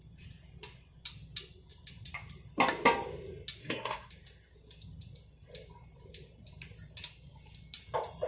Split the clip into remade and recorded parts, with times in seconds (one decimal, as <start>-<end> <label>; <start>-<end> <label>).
0.0-3.6 recorded; 3.6-4.1 remade; 4.1-8.3 recorded